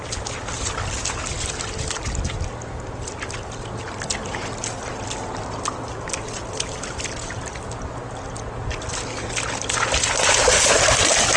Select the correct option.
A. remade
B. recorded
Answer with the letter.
B